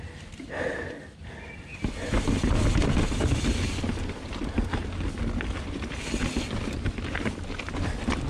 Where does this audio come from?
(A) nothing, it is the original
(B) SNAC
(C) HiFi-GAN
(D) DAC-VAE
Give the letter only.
A